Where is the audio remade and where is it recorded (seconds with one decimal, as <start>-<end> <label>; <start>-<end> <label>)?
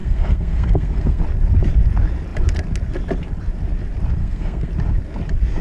0.0-1.2 remade; 1.2-4.2 recorded; 4.2-4.7 remade; 4.7-5.6 recorded